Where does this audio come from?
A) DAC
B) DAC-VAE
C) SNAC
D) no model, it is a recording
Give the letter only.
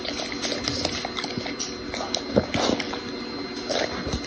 D